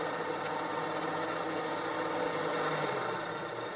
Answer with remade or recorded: recorded